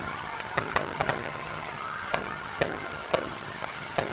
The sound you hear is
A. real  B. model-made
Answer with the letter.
B